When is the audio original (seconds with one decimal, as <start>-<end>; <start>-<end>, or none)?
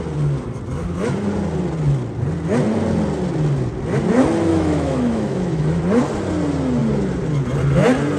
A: 0.0-4.5; 5.8-8.2